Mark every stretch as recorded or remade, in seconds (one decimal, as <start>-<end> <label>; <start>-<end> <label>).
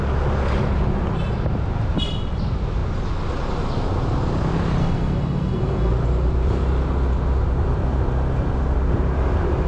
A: 0.0-4.8 recorded; 4.8-5.9 remade; 5.9-9.7 recorded